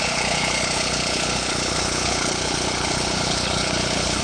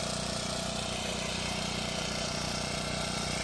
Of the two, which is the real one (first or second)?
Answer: second